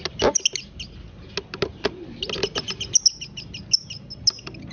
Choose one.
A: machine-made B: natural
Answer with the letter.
B